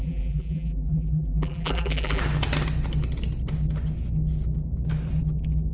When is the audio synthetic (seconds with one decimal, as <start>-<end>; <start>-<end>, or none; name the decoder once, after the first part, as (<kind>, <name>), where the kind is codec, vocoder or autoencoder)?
0.0-2.2 (vocoder, BigVGAN v2)